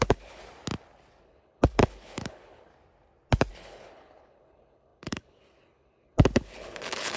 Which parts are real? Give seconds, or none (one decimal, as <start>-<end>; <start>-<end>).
0.4-1.2; 2.7-3.5